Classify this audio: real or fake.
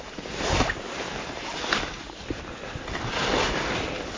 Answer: real